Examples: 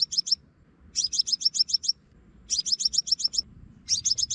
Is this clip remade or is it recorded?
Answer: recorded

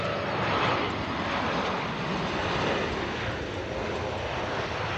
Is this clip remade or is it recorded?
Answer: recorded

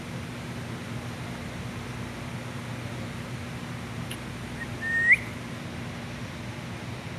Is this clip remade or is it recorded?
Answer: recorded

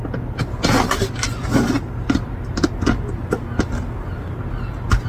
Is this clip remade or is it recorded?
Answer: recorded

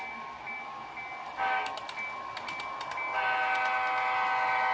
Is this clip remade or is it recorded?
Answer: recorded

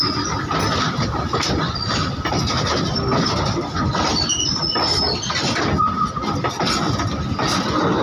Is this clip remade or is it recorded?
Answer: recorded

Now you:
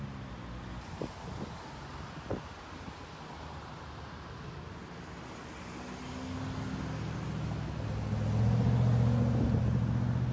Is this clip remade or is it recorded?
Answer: recorded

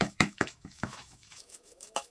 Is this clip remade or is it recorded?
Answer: remade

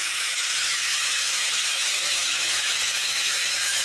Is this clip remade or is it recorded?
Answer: remade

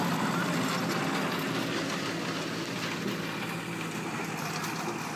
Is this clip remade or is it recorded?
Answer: recorded